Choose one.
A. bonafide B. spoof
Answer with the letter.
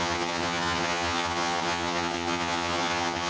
B